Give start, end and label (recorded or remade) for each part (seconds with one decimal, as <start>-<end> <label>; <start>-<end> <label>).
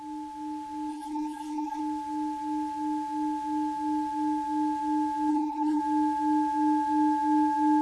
0.0-0.9 recorded; 0.9-1.8 remade; 1.8-5.3 recorded; 5.3-5.8 remade; 5.8-7.8 recorded